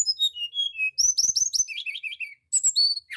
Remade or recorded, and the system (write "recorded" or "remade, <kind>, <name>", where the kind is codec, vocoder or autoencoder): recorded